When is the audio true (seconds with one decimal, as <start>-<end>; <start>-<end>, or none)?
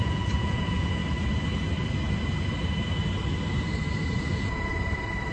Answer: 1.0-4.2; 4.7-5.3